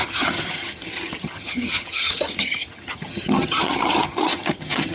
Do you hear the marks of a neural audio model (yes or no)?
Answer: yes